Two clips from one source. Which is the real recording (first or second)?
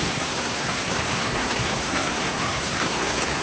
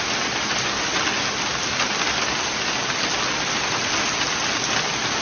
second